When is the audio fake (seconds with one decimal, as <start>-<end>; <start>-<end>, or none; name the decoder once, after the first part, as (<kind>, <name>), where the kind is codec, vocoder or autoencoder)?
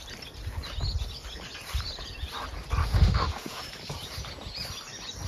2.8-3.6 (autoencoder, DAC-VAE)